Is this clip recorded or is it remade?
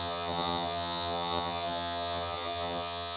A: remade